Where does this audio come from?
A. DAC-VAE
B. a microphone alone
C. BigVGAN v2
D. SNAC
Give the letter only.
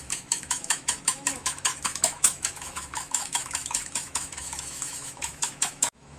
A